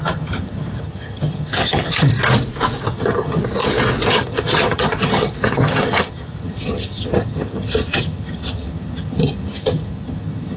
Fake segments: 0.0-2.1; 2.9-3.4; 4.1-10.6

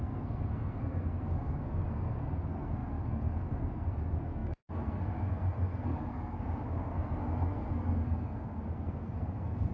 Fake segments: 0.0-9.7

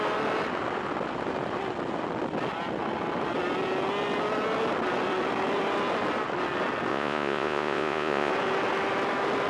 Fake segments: 6.9-8.3

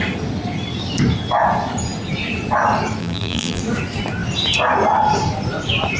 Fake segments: 3.0-3.6

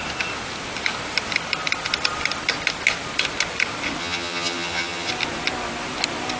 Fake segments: 4.0-5.1

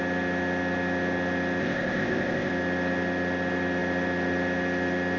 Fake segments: 1.6-2.5